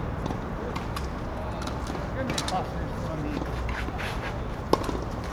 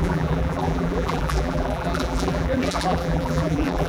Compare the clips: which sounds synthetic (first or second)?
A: second